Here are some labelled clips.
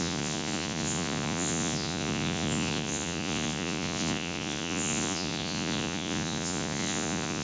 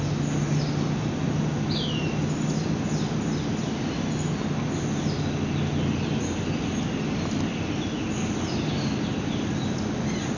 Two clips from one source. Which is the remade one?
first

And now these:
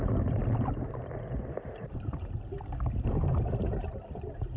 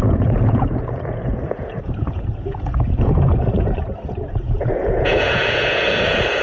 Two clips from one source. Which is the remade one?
second